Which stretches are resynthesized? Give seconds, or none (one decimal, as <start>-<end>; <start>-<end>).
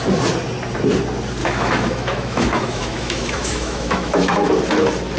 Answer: 1.4-4.5